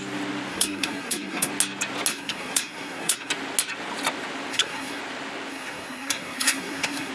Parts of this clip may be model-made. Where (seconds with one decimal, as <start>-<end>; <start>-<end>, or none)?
0.5-1.5; 2.1-3.3; 4.5-5.0; 5.5-7.1